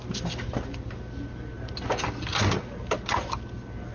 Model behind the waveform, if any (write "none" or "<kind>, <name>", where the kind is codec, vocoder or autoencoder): none